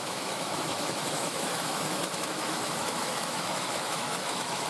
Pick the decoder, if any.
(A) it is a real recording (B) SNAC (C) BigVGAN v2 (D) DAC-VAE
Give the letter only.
D